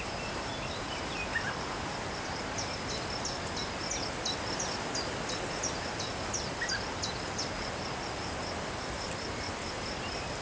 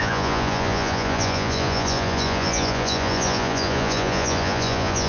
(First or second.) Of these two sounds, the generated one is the second